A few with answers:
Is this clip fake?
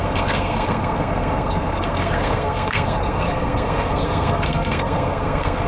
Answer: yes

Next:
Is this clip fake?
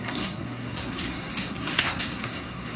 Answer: yes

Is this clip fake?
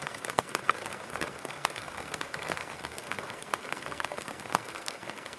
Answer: yes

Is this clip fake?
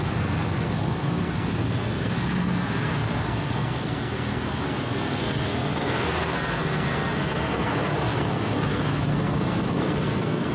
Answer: yes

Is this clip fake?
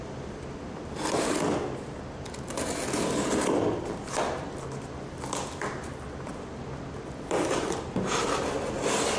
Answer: no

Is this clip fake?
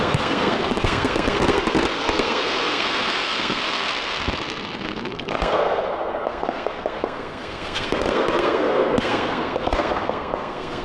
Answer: yes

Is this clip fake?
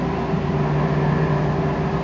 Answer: no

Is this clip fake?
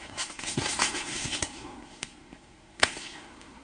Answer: yes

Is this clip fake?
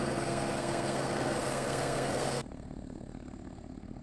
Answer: yes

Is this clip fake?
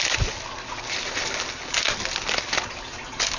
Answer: no